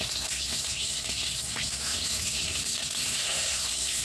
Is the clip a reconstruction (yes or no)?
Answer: yes